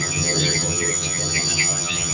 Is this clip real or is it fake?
fake